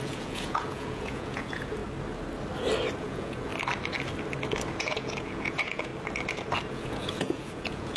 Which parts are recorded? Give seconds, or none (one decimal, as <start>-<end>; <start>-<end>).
1.8-3.0; 3.5-4.8; 5.9-6.7